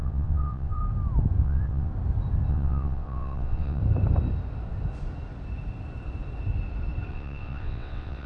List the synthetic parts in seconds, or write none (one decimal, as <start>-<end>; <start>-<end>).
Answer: 0.0-0.8; 1.4-1.9; 2.5-3.8; 7.1-8.3